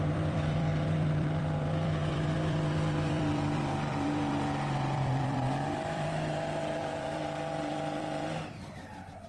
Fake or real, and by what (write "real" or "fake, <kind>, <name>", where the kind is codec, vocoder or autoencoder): fake, vocoder, BigVGAN v2